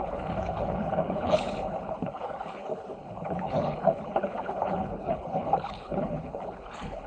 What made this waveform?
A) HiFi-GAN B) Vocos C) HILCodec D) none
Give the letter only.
C